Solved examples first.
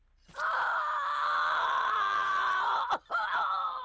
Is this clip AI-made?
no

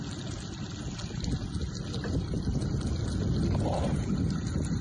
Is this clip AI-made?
no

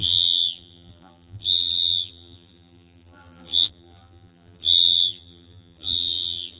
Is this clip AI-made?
yes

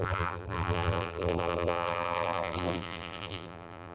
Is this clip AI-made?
yes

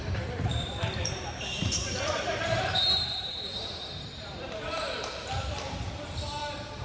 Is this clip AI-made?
yes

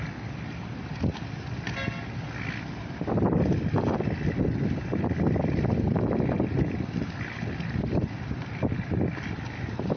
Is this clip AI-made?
no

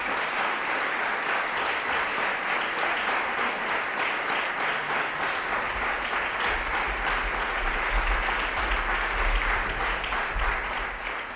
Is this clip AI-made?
no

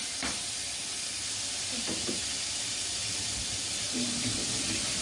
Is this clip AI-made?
yes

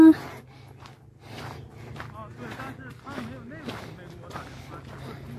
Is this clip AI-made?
no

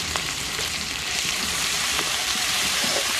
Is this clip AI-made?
yes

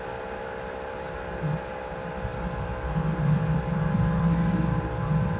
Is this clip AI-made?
yes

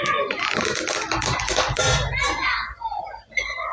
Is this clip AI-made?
yes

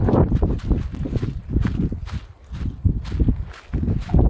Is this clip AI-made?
no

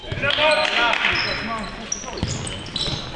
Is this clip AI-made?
no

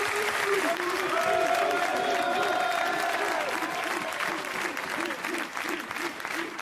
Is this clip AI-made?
yes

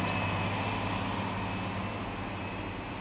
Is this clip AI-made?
no